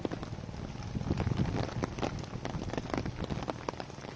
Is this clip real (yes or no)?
yes